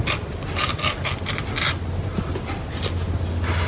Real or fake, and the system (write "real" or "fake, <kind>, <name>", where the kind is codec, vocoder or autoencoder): real